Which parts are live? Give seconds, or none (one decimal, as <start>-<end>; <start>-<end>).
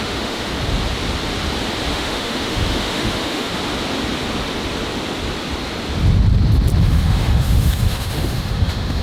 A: 0.5-1.9; 3.5-6.8